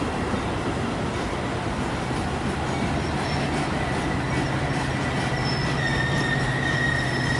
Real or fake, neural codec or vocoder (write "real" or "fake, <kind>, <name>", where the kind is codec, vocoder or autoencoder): real